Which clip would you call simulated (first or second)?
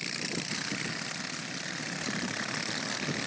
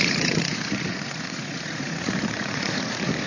second